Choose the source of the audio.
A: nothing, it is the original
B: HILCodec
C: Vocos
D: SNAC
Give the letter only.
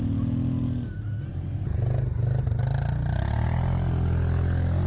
A